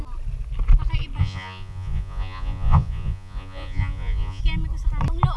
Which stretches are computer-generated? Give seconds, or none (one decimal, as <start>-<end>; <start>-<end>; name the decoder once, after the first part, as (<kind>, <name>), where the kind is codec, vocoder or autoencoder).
1.2-4.4 (vocoder, Vocos)